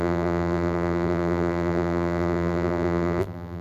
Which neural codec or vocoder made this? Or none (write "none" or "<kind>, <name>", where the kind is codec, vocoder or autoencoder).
vocoder, BigVGAN v2